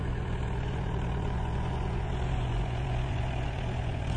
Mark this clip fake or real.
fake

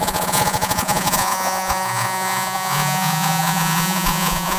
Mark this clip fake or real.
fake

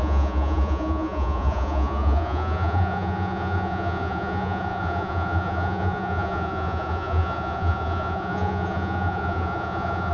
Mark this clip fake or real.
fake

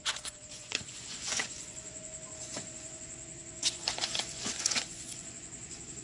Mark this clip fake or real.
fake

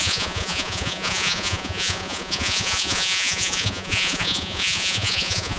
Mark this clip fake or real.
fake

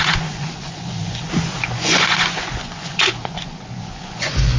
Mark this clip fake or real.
fake